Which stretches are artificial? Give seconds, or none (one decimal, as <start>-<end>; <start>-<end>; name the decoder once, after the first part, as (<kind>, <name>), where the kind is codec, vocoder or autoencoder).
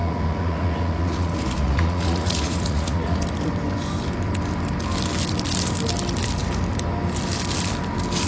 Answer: 0.0-3.2 (vocoder, Vocos)